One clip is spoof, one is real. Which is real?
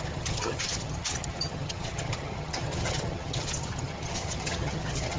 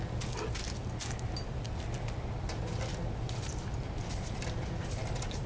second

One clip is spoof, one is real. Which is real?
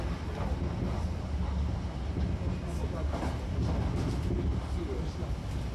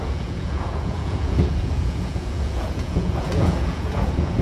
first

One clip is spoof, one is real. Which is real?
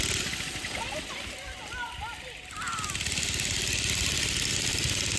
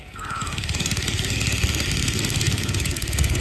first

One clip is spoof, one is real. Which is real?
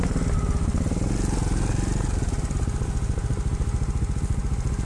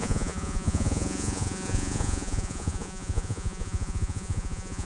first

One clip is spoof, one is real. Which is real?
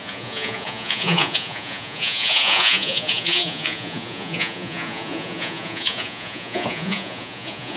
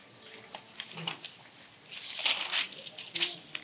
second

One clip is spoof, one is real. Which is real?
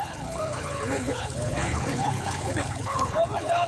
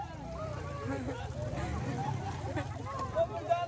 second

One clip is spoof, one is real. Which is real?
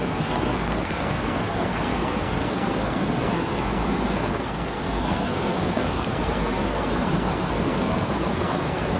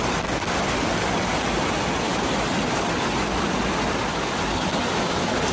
second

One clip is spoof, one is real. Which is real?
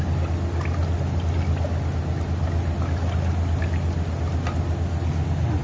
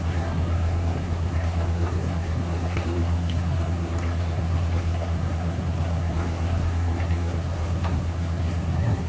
first